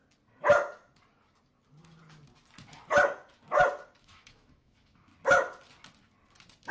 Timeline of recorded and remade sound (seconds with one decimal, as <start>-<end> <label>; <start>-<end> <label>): 0.0-4.0 recorded; 4.0-5.1 remade; 5.1-6.7 recorded